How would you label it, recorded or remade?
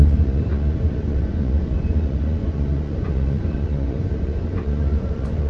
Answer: remade